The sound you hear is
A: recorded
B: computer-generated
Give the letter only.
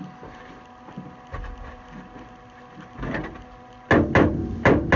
A